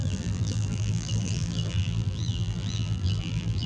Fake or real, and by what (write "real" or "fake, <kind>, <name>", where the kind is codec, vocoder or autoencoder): fake, vocoder, BigVGAN v2